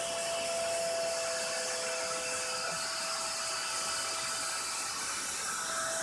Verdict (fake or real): real